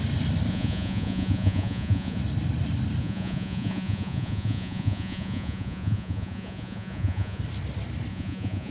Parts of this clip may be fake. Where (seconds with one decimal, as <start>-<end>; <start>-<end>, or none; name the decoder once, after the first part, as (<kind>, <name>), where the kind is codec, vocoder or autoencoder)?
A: 0.5-2.2 (vocoder, Vocos); 3.0-7.4; 8.1-8.7